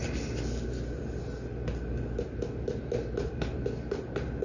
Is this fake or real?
real